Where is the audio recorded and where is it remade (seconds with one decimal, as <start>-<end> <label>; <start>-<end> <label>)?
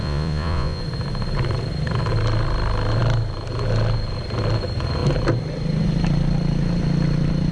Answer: 0.0-0.8 remade; 0.8-7.5 recorded